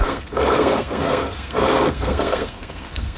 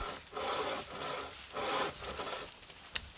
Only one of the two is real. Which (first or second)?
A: second